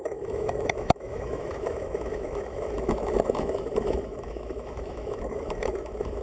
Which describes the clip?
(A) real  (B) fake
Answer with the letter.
B